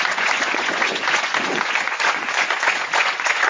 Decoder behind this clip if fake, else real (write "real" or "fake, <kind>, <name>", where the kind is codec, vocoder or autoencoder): fake, vocoder, Vocos